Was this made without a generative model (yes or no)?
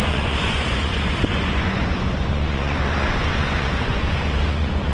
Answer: no